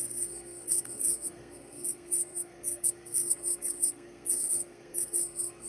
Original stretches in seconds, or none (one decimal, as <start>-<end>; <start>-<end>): none